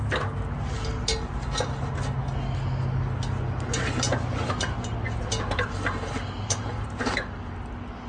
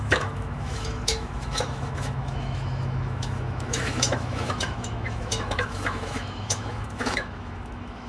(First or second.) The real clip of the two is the first